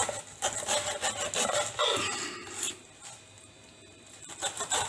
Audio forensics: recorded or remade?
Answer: recorded